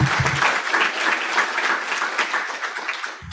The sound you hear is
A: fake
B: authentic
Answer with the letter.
B